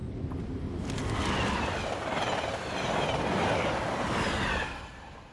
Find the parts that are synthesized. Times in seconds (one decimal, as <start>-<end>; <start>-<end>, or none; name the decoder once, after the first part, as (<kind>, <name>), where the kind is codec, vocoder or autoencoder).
none